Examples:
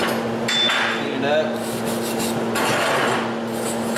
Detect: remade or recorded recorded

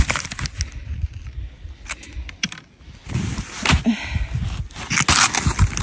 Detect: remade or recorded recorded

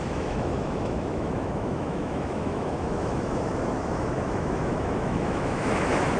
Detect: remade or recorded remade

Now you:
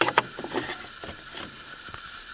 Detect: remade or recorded recorded